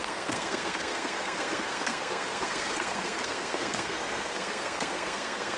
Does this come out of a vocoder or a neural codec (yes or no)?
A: yes